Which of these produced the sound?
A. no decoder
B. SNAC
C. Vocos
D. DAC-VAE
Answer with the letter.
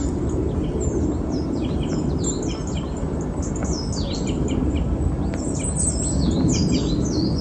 A